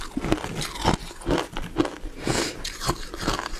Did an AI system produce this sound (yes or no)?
no